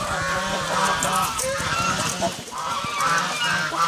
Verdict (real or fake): real